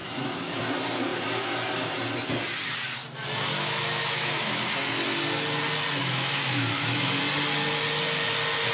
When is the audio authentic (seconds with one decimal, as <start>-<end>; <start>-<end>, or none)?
0.6-3.5; 4.9-6.0; 7.2-8.7